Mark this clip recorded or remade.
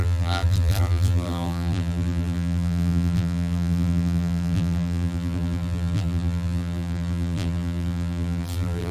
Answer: remade